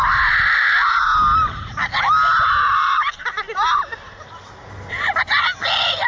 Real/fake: real